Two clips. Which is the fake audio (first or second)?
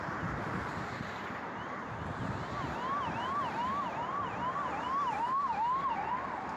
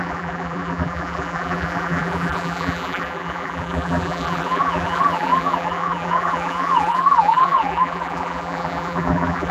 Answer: second